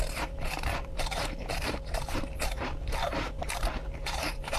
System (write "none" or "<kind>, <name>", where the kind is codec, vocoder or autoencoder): vocoder, BigVGAN v2